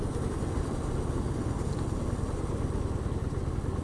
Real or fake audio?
real